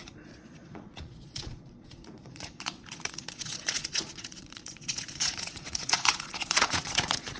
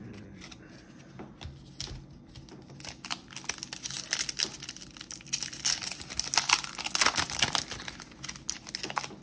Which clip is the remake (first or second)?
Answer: first